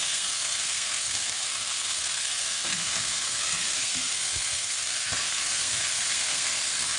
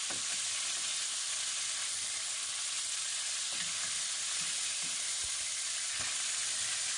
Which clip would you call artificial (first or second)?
first